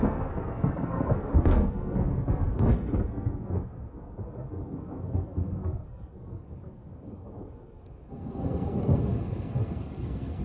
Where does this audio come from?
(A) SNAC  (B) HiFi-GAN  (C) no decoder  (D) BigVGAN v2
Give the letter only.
A